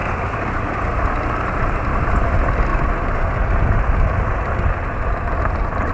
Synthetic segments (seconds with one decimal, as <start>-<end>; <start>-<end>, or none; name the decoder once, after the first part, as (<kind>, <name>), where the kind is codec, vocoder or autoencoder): none